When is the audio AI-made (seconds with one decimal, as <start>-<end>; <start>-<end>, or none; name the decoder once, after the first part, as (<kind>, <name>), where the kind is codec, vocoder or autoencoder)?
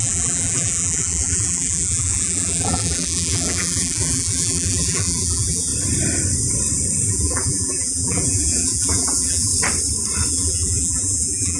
0.0-5.7 (vocoder, BigVGAN v2); 7.1-9.5; 10.3-11.6